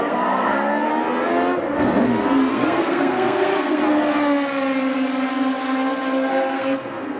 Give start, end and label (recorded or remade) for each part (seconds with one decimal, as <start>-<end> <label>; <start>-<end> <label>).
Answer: 0.0-0.9 remade; 0.9-2.5 recorded; 2.5-3.8 remade; 3.8-6.3 recorded; 6.3-7.2 remade